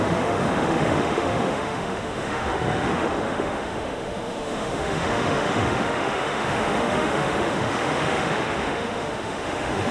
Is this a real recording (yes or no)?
no